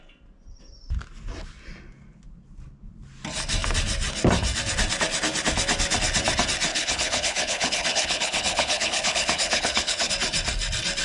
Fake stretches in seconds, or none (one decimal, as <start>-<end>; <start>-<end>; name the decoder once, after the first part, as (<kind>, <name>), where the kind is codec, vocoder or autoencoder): 6.7-10.1 (codec, HILCodec)

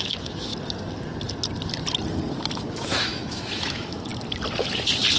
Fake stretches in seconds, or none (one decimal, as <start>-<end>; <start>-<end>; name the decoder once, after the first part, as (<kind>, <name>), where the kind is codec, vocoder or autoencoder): 0.0-0.5 (autoencoder, DAC-VAE); 2.6-4.1